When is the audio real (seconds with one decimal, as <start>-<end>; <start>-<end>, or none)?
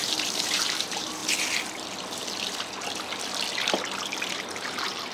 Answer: 1.2-4.3